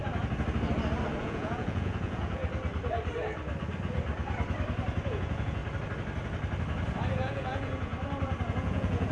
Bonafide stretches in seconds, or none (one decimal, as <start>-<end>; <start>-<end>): 0.0-1.2; 2.4-5.1; 5.6-7.1; 7.9-8.5